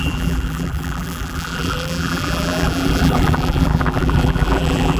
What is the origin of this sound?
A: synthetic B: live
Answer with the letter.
A